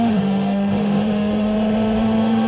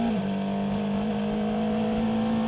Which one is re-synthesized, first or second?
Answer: first